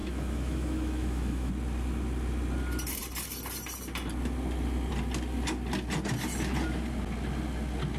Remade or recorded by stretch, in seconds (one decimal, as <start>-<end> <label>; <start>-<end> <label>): 0.0-1.5 remade; 1.5-8.0 recorded